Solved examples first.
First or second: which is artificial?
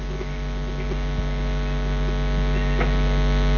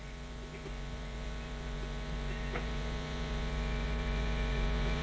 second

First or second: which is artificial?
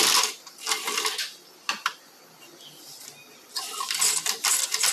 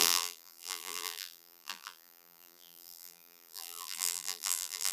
second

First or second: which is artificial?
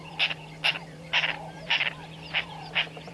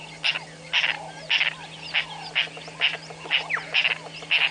first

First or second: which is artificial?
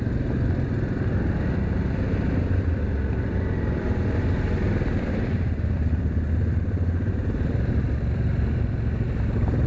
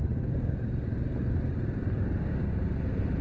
first